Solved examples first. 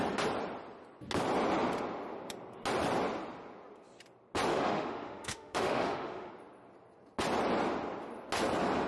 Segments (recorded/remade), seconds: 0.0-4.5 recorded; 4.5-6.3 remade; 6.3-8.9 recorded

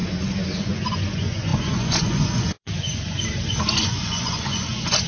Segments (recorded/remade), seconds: 0.0-0.6 recorded; 0.6-5.1 remade

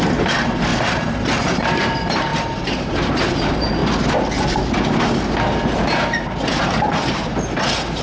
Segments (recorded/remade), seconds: 0.0-3.8 remade; 3.8-5.8 recorded; 5.8-8.0 remade

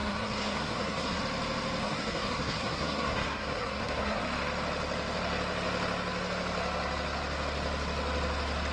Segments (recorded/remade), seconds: 0.0-1.2 remade; 1.2-1.8 recorded; 1.8-4.2 remade; 4.2-8.7 recorded

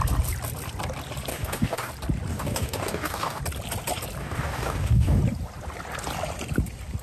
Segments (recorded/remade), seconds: 0.0-1.3 recorded; 1.3-1.9 remade; 1.9-2.3 recorded; 2.3-3.4 remade; 3.4-4.2 recorded; 4.2-5.2 remade; 5.2-7.0 recorded

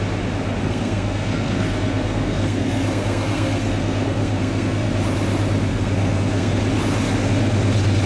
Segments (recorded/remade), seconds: 0.0-0.6 recorded; 0.6-4.9 remade; 4.9-5.7 recorded; 5.7-6.6 remade; 6.6-8.1 recorded

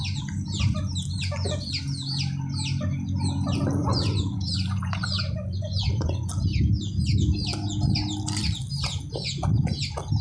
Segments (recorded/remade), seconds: 0.0-3.8 recorded; 3.8-6.3 remade; 6.3-10.2 recorded